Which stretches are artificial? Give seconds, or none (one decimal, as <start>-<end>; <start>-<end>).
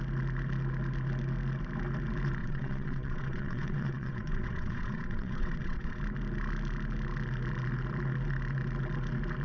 2.4-6.0